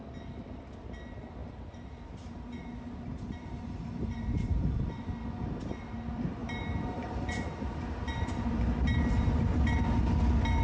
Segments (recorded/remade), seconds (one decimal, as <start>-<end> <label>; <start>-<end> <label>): 0.0-1.4 recorded; 1.4-4.8 remade; 4.8-6.4 recorded; 6.4-10.1 remade; 10.1-10.6 recorded